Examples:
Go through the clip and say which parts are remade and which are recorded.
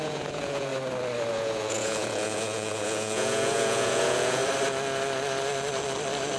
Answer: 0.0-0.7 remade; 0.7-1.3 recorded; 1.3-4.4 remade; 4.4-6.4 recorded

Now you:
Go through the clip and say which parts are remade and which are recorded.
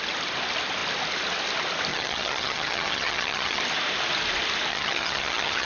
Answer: 0.0-1.9 recorded; 1.9-3.6 remade; 3.6-4.7 recorded; 4.7-5.7 remade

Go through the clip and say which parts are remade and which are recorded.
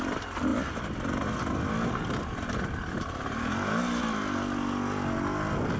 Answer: 0.0-5.8 recorded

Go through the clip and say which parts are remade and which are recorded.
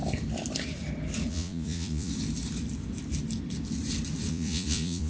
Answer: 0.0-1.3 recorded; 1.3-2.1 remade; 2.1-4.3 recorded; 4.3-5.1 remade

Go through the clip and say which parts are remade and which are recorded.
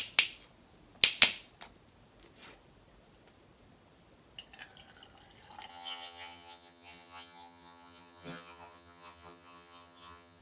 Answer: 0.0-5.7 recorded; 5.7-10.4 remade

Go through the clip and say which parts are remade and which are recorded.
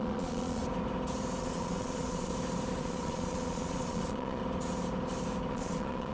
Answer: 0.0-0.6 remade; 0.6-1.4 recorded; 1.4-2.3 remade; 2.3-2.8 recorded; 2.8-4.4 remade; 4.4-5.5 recorded; 5.5-6.1 remade